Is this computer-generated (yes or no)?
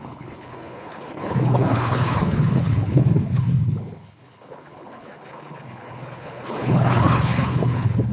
yes